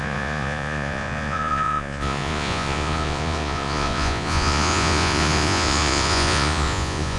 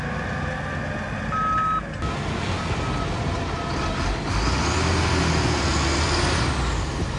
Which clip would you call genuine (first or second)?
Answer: second